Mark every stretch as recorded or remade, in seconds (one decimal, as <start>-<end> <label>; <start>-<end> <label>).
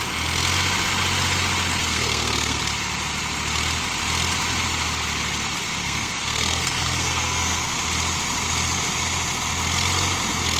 0.0-1.8 recorded; 1.8-2.6 remade; 2.6-5.8 recorded; 5.8-7.8 remade; 7.8-10.6 recorded